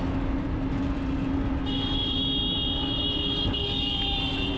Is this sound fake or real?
real